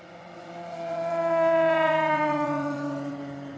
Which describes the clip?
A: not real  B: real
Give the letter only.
A